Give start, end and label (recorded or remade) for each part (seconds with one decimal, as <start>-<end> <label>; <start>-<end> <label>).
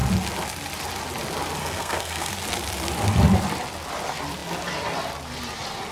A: 0.0-1.6 recorded; 1.6-2.3 remade; 2.3-5.9 recorded